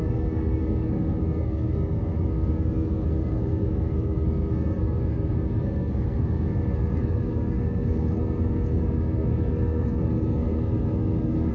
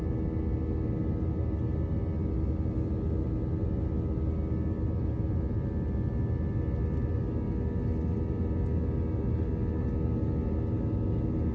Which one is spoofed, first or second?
first